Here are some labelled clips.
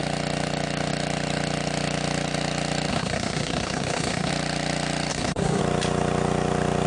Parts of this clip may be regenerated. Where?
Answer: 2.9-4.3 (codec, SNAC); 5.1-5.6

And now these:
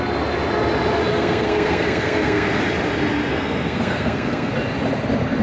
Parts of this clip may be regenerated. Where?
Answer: 1.1-2.6 (codec, SNAC); 3.3-4.5

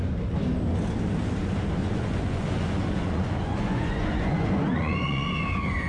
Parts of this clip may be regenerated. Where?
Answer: 1.8-5.3 (vocoder, Vocos)

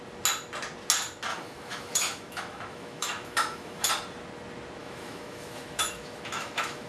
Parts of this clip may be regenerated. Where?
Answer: 1.3-3.9 (autoencoder, DAC-VAE); 4.8-6.9

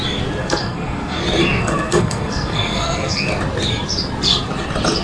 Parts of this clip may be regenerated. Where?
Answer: 0.4-1.2 (codec, SNAC); 1.6-3.3

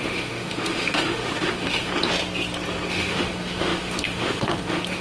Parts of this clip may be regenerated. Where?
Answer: 0.0-1.9 (autoencoder, DAC-VAE); 2.9-5.0